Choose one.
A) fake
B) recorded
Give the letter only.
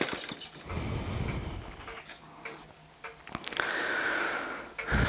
B